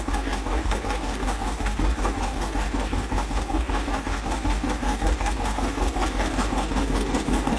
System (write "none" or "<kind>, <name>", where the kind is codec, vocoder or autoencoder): codec, DAC